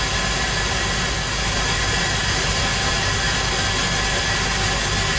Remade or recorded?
recorded